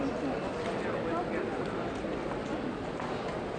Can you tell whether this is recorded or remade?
recorded